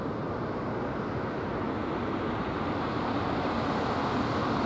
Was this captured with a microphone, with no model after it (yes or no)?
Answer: yes